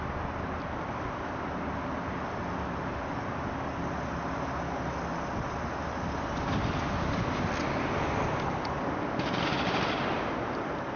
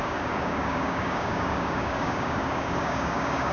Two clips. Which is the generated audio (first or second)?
second